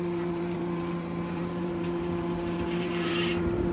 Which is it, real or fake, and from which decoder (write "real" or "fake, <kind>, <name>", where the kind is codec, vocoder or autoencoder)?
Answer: fake, vocoder, BigVGAN v2